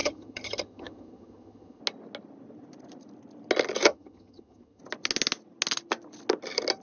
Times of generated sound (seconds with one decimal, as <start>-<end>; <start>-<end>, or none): 0.0-1.8; 3.9-4.8